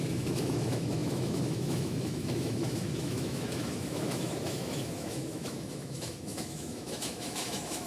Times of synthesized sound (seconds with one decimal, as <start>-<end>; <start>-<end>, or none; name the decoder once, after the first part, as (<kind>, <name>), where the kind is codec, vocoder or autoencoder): 0.0-7.9 (autoencoder, DAC-VAE)

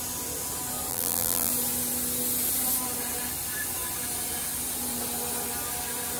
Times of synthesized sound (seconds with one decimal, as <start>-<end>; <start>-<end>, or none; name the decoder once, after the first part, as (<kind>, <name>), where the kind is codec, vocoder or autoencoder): 0.9-1.5 (vocoder, BigVGAN v2)

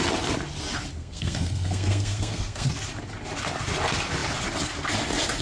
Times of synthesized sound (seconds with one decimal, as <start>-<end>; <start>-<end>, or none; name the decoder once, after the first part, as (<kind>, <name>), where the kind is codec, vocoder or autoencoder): 1.0-2.7 (codec, SNAC)

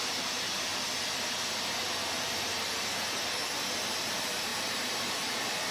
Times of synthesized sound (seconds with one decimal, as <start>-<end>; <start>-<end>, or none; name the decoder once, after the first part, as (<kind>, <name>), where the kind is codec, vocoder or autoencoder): 0.0-0.7 (vocoder, BigVGAN v2); 3.9-5.7

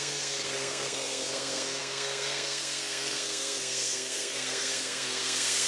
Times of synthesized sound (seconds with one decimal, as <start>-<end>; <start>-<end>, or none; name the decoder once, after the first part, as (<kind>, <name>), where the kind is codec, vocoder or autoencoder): 0.0-5.7 (codec, SNAC)